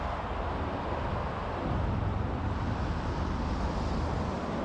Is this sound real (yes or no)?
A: yes